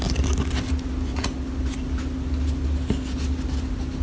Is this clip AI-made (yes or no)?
no